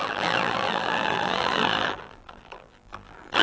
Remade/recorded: remade